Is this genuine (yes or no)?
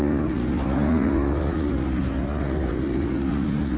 no